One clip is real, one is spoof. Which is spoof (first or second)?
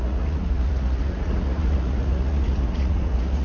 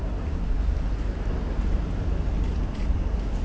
first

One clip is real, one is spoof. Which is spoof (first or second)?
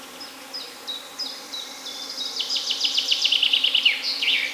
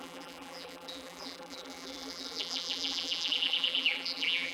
second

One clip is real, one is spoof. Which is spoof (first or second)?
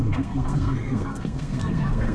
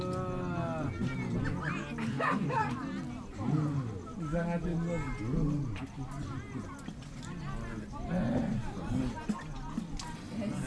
first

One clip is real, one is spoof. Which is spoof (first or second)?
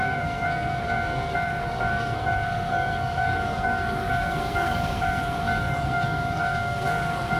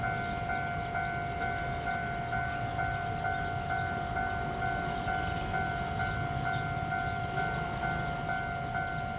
first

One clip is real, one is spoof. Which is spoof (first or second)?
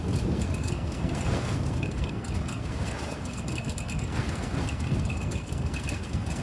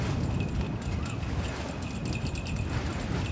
first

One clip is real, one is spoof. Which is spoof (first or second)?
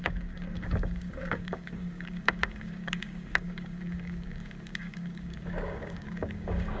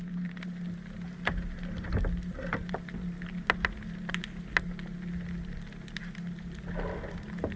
first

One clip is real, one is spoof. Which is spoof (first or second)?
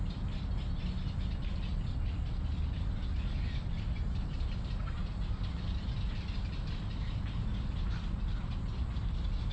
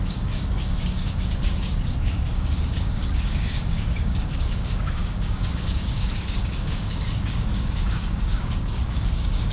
second